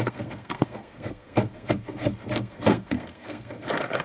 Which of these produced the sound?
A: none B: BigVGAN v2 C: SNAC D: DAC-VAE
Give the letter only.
C